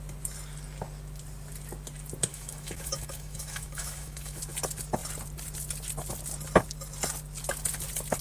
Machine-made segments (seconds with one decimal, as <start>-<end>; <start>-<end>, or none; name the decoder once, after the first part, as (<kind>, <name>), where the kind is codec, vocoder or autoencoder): 2.3-4.4 (autoencoder, DAC-VAE)